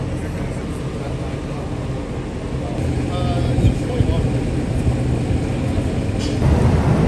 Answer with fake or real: real